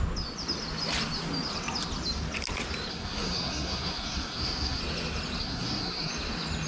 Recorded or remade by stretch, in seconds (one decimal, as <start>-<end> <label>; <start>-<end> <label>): 0.0-2.9 recorded; 2.9-4.8 remade; 4.8-5.4 recorded; 5.4-6.1 remade; 6.1-6.7 recorded